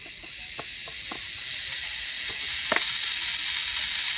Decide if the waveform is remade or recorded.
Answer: recorded